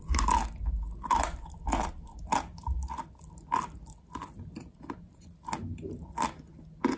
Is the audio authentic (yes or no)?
yes